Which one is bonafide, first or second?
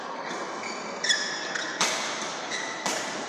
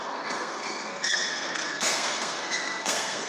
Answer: first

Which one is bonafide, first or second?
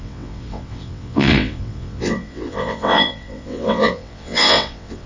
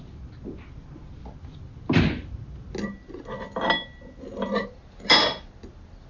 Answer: second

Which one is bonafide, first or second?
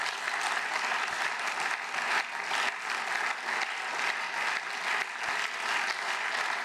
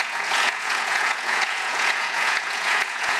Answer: first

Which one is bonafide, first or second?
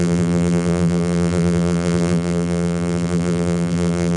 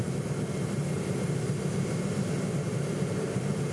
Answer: second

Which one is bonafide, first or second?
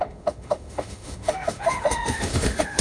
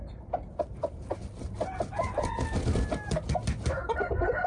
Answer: second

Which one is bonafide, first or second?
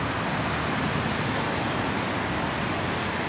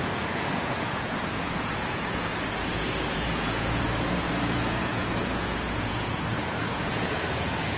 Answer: first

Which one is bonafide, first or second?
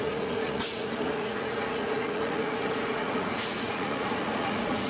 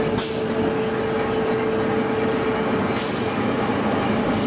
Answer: second